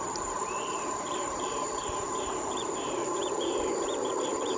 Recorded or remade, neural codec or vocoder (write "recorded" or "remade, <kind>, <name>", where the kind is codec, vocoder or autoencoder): remade, vocoder, BigVGAN v2